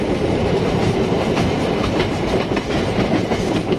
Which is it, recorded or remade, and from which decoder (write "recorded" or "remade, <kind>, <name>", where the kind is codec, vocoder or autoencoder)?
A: remade, vocoder, BigVGAN v2